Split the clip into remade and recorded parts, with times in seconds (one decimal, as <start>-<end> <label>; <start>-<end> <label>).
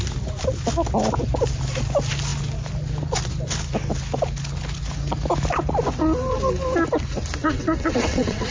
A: 0.0-7.4 recorded; 7.4-8.5 remade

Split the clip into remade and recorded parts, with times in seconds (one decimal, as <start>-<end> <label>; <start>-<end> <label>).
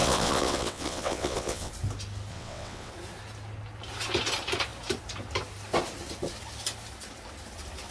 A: 0.0-1.7 remade; 1.7-2.3 recorded; 2.3-2.9 remade; 2.9-7.9 recorded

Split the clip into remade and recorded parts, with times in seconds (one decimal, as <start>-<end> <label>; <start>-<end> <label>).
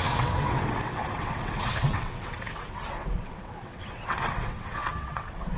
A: 0.0-5.6 remade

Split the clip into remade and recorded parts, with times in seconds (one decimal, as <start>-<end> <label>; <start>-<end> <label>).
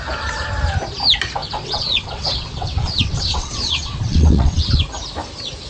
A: 0.0-1.4 recorded; 1.4-4.8 remade; 4.8-5.7 recorded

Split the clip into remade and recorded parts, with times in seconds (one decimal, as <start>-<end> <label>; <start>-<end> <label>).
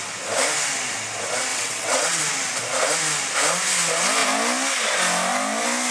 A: 0.0-1.5 recorded; 1.5-2.2 remade; 2.2-5.9 recorded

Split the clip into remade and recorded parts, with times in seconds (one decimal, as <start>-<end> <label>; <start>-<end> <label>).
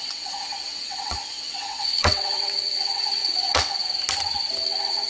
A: 0.0-3.8 remade; 3.8-4.6 recorded; 4.6-5.1 remade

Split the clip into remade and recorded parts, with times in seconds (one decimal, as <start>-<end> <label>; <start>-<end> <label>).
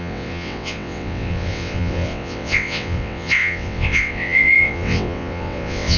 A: 0.0-6.0 remade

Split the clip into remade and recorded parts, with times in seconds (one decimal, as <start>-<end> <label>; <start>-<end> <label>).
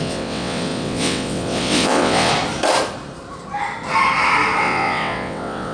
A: 0.0-2.3 remade; 2.3-4.6 recorded; 4.6-5.7 remade